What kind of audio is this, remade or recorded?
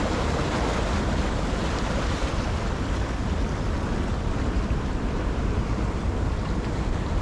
remade